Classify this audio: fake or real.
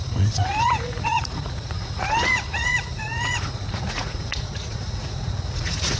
fake